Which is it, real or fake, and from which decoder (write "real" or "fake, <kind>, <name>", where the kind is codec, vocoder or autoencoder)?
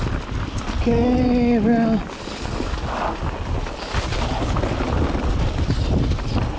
real